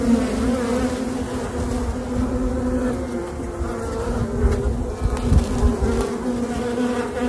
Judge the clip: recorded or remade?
recorded